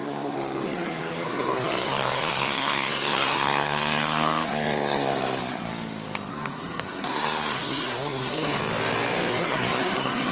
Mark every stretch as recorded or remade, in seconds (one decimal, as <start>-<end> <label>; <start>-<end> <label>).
0.0-5.7 remade; 5.7-6.3 recorded; 6.3-8.6 remade; 8.6-9.3 recorded; 9.3-10.3 remade